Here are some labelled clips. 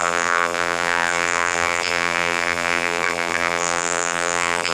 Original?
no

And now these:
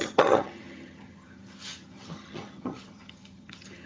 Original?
no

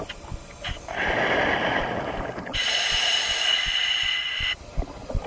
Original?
yes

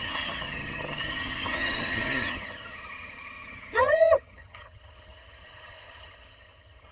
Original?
no